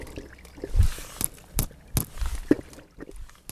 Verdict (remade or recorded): recorded